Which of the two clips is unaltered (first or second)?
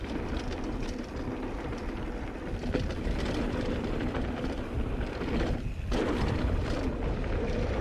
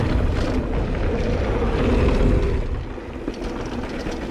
second